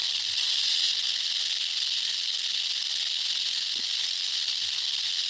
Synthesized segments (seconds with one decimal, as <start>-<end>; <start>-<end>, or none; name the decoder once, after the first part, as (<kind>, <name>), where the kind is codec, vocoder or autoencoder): none